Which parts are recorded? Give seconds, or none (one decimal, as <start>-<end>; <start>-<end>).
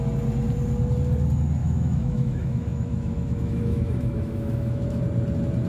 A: 0.0-1.6; 5.0-5.7